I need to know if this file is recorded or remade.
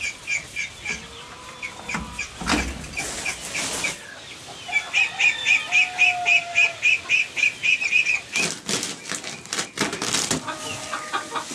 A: recorded